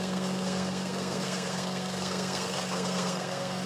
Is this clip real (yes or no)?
no